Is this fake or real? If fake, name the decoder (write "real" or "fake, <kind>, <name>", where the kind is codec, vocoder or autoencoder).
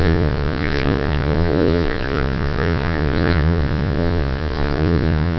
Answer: fake, vocoder, Vocos